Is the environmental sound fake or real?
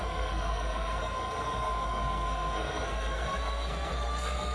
fake